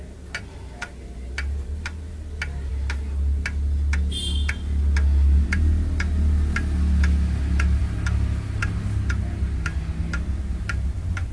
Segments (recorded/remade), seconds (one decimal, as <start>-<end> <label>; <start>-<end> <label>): 0.0-11.3 recorded